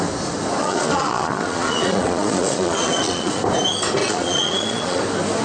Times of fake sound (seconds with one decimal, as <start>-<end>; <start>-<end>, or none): 0.6-3.4; 4.0-5.0